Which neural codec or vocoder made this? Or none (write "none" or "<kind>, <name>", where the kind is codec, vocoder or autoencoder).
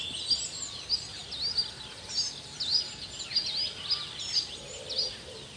none